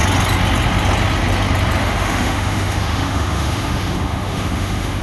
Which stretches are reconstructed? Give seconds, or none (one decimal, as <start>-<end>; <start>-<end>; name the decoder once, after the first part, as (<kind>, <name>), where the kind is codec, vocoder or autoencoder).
1.8-5.0 (autoencoder, DAC-VAE)

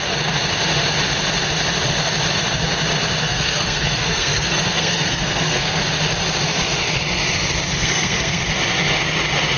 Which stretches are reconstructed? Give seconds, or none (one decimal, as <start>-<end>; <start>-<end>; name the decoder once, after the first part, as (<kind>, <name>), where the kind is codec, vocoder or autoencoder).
3.2-5.8 (codec, SNAC); 7.7-8.4